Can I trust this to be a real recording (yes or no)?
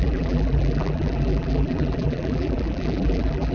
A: no